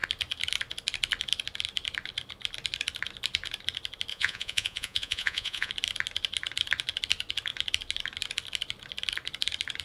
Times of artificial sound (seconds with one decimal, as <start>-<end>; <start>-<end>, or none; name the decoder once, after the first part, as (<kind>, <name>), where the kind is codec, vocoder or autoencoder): 4.1-5.7 (vocoder, Vocos)